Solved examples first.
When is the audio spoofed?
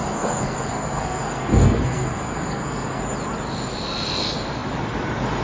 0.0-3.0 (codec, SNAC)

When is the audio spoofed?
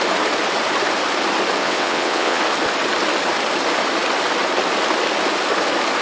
1.6-2.4 (vocoder, WaveNeXt)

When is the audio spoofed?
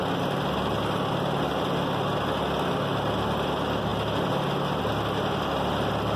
none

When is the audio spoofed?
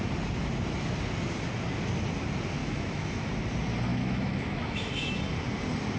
2.6-3.3 (autoencoder, DAC-VAE); 3.9-5.2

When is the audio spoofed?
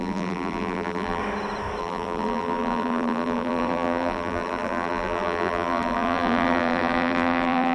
0.0-1.2 (vocoder, BigVGAN v2); 1.8-7.7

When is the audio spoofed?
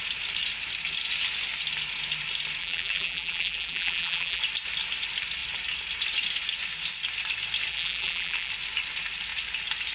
2.6-4.4 (vocoder, BigVGAN v2); 7.7-8.5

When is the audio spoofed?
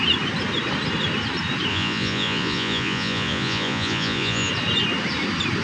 1.7-4.5 (vocoder, Vocos)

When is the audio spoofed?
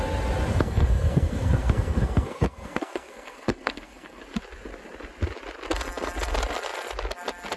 0.5-4.2 (codec, SNAC)